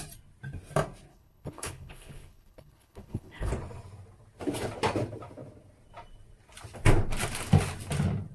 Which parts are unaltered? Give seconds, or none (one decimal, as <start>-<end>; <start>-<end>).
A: 0.0-1.1; 3.5-8.3